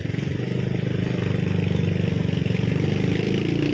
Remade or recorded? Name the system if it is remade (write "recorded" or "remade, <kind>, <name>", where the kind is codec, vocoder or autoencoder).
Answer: recorded